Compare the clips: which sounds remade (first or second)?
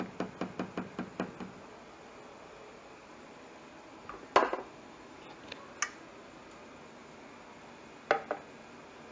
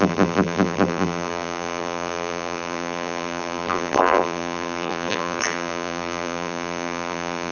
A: second